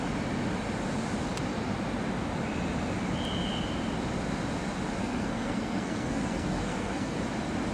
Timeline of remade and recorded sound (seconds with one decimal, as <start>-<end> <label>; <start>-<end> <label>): 0.0-5.0 recorded; 5.0-7.2 remade; 7.2-7.7 recorded